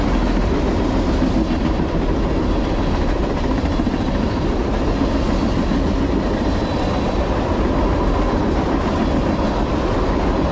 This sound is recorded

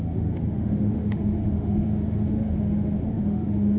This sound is remade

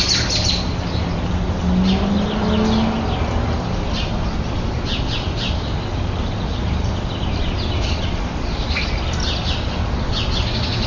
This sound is recorded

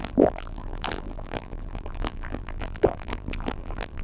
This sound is remade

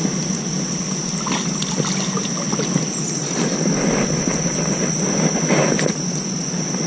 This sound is recorded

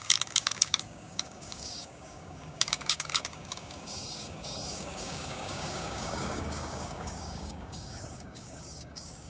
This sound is remade